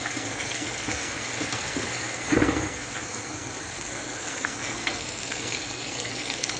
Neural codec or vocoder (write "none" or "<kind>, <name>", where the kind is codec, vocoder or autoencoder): codec, SNAC